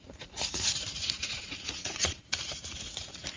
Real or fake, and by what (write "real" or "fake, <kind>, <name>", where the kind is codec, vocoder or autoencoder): fake, vocoder, Vocos